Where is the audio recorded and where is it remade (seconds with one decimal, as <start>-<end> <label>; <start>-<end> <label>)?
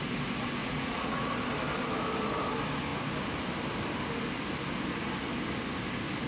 0.0-0.6 recorded; 0.6-1.3 remade; 1.3-6.3 recorded